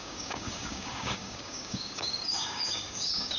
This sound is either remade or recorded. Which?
remade